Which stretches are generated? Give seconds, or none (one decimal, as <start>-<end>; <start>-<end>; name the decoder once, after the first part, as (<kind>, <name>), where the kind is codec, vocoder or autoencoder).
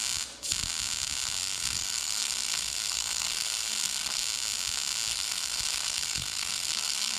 1.4-4.2 (codec, SNAC); 5.1-7.2